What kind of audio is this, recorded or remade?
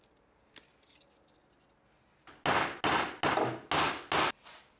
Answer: recorded